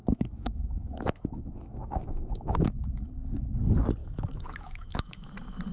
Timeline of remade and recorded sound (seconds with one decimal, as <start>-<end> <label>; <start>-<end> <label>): 0.0-2.8 remade; 2.8-4.0 recorded; 4.0-5.3 remade; 5.3-5.7 recorded